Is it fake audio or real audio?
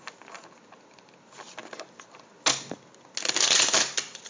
real